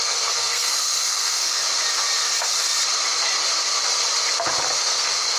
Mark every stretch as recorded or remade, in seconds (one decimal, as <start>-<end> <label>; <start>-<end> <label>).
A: 0.0-1.6 remade; 1.6-4.8 recorded; 4.8-5.4 remade